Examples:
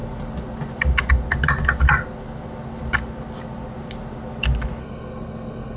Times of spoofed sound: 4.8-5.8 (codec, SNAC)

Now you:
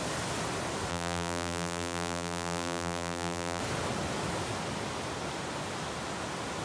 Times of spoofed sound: 0.9-3.6 (vocoder, BigVGAN v2)

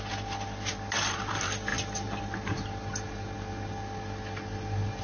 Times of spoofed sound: none

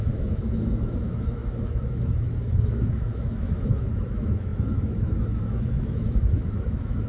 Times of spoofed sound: 0.0-7.1 (autoencoder, DAC-VAE)